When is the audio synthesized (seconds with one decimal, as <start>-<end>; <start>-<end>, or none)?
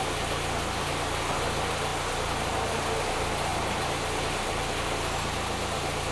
none